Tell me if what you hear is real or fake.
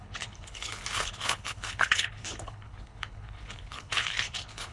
fake